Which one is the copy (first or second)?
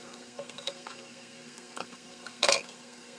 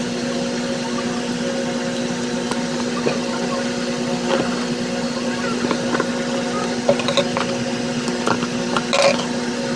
first